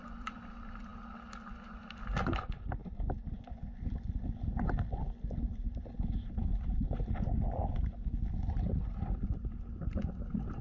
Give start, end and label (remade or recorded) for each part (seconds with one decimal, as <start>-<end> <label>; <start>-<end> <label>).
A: 0.0-0.9 remade; 0.9-2.4 recorded; 2.4-2.8 remade; 2.8-6.3 recorded; 6.3-10.6 remade